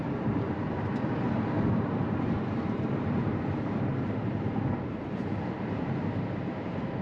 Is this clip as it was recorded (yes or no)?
no